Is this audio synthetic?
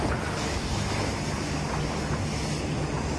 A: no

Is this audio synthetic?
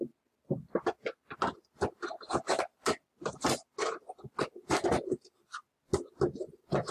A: no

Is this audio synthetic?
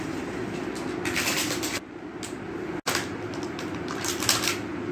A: no